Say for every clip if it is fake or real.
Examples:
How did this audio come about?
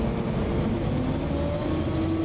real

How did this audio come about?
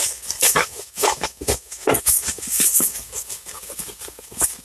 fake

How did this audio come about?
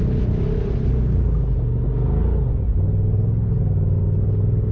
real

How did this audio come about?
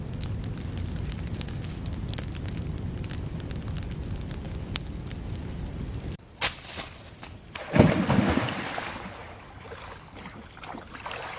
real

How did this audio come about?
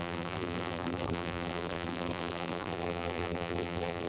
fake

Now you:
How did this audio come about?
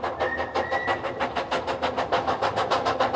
real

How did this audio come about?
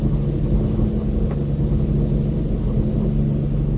real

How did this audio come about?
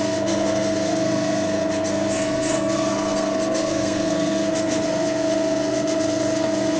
fake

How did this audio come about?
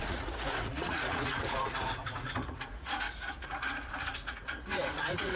fake